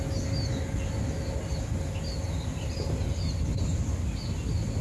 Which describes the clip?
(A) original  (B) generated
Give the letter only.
A